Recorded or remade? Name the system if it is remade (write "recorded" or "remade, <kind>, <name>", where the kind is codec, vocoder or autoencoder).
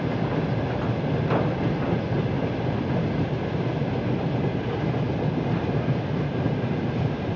recorded